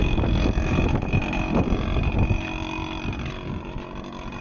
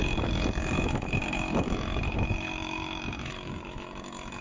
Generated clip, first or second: second